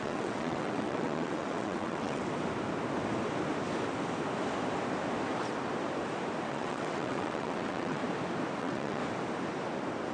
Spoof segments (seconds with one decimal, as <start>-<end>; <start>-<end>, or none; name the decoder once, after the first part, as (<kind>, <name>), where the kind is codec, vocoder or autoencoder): 0.0-2.2 (vocoder, WaveNeXt); 6.5-8.0; 8.6-9.0